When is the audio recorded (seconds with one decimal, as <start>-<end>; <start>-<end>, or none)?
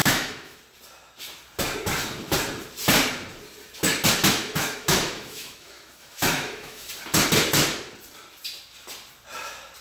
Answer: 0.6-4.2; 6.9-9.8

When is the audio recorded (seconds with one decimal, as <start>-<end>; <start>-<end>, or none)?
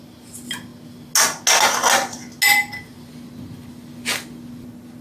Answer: 0.0-5.0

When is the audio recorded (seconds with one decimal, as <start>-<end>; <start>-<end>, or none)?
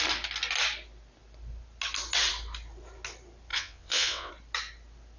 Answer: 0.0-3.5; 4.3-5.2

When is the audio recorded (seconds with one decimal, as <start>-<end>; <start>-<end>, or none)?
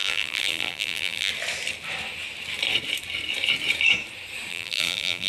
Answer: 1.3-4.5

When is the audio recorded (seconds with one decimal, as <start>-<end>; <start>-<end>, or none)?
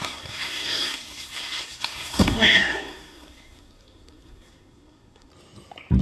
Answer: 5.3-6.0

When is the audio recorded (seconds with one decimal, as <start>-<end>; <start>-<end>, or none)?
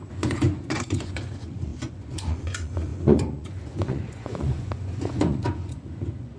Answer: none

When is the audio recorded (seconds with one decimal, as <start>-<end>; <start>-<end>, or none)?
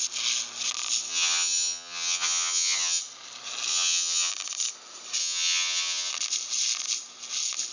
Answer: 0.0-1.1; 3.0-3.7; 4.3-5.2; 6.1-7.7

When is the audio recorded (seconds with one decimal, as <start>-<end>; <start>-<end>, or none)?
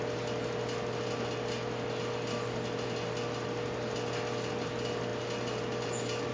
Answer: 0.0-6.3